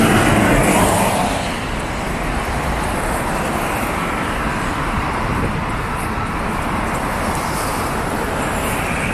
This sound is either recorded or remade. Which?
recorded